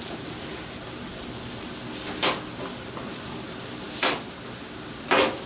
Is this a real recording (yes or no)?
yes